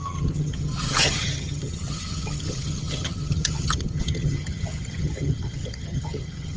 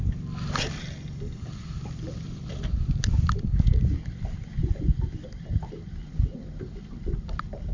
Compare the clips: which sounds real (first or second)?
second